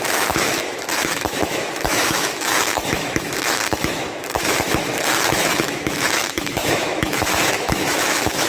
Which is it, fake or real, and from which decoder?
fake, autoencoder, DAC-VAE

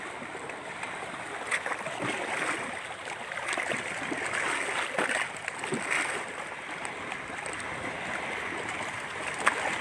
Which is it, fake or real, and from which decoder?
real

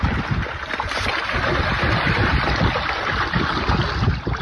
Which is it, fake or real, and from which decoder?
real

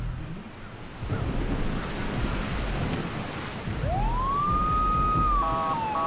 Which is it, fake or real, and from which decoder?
real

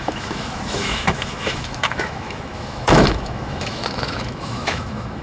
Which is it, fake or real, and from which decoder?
fake, autoencoder, DAC-VAE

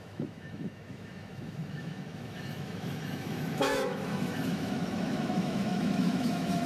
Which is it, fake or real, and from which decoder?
fake, autoencoder, DAC-VAE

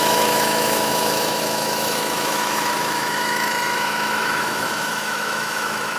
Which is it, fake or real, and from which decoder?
fake, autoencoder, DAC-VAE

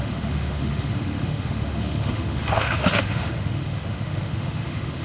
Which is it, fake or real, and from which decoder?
fake, autoencoder, DAC-VAE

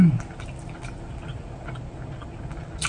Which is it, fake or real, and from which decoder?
real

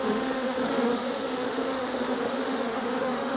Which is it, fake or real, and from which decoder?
fake, autoencoder, DAC-VAE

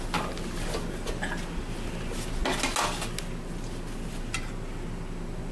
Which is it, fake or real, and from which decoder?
real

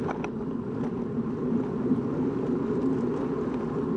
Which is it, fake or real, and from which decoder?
real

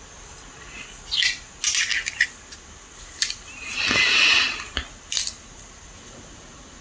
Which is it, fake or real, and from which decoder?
real